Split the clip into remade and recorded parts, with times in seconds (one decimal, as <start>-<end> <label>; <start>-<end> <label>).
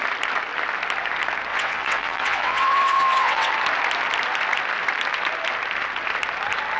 0.0-1.5 recorded; 1.5-3.5 remade; 3.5-6.8 recorded